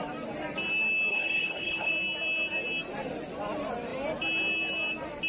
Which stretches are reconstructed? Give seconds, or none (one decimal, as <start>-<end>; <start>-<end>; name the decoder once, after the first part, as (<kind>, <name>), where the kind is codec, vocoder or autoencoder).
1.1-1.9 (codec, HILCodec)